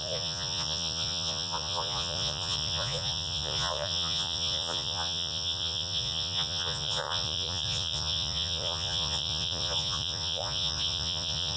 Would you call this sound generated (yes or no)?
yes